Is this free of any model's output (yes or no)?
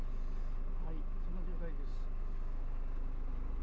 yes